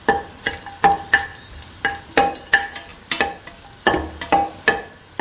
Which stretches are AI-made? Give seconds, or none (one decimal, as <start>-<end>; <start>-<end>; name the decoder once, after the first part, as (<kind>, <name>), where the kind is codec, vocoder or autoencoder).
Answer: none